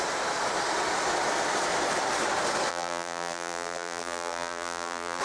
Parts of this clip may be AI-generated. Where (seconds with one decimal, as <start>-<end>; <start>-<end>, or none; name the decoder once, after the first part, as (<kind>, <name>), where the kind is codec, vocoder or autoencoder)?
2.7-5.2 (vocoder, BigVGAN v2)